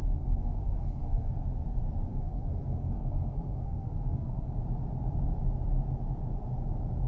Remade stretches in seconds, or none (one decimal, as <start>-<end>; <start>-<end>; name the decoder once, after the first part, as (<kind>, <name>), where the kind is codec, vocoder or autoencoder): 0.0-1.3 (codec, SNAC); 2.1-4.5

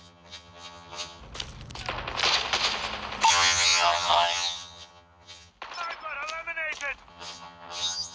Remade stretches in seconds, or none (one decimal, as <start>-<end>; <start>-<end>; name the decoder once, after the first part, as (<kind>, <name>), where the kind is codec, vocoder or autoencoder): 0.0-1.2 (vocoder, HiFi-GAN); 3.3-5.5; 7.1-8.1

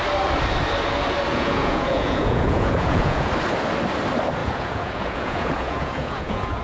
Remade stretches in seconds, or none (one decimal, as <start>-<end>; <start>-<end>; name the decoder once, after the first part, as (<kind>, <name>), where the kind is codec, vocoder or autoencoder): 1.3-3.3 (vocoder, Vocos); 4.4-6.6